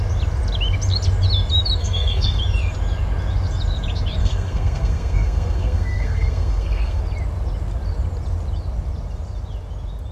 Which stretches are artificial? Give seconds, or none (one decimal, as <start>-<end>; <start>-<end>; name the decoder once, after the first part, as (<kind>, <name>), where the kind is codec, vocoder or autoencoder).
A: 1.8-2.4 (codec, SNAC); 4.2-7.0